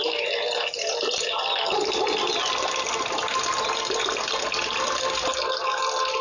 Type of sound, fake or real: real